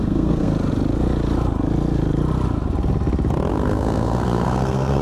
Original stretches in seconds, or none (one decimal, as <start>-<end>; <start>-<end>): 0.5-3.5